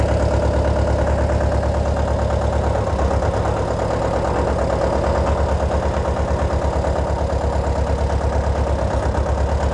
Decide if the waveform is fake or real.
real